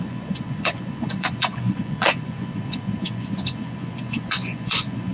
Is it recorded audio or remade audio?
remade